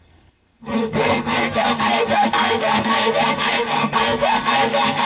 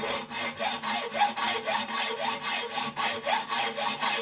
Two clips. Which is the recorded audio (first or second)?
second